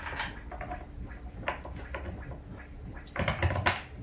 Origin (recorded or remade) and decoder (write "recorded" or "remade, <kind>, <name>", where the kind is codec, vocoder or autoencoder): recorded